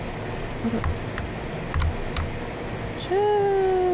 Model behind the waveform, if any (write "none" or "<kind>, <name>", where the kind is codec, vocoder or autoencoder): none